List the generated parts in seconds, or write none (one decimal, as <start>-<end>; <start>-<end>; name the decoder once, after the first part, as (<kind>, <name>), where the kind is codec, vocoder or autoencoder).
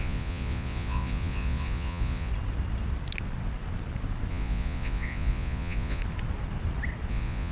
0.0-2.3 (vocoder, Vocos); 4.3-6.0; 7.1-7.5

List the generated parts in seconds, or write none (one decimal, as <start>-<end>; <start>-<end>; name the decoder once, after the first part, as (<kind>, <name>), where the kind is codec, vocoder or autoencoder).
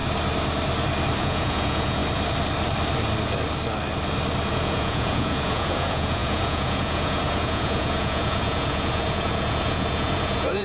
1.2-2.0 (vocoder, Vocos); 4.5-10.6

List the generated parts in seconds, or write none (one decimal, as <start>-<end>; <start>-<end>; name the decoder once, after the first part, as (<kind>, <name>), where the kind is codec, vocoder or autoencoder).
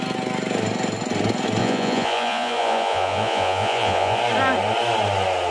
1.6-4.2 (vocoder, Vocos)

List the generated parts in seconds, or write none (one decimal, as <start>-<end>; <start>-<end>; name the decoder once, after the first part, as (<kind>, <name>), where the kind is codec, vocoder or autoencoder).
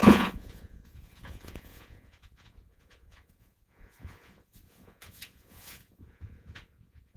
0.0-7.2 (vocoder, Vocos)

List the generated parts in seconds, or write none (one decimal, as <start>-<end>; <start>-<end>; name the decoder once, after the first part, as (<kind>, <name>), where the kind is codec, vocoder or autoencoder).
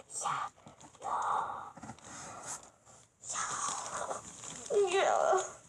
none